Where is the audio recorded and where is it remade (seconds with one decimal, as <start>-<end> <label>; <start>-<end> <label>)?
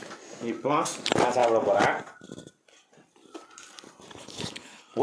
0.0-4.2 recorded; 4.2-5.0 remade